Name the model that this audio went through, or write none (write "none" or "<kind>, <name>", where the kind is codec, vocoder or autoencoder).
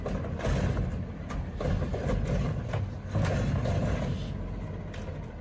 none